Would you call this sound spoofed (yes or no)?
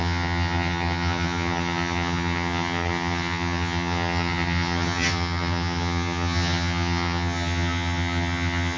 yes